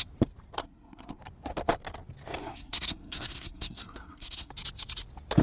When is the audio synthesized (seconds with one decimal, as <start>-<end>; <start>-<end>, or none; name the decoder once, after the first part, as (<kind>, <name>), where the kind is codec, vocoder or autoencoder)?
0.6-1.2 (codec, SNAC); 2.4-4.5